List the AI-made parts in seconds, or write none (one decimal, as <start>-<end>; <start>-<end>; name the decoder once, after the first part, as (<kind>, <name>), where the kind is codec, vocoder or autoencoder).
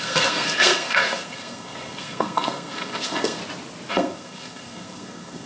0.0-3.4 (codec, SNAC); 3.9-5.5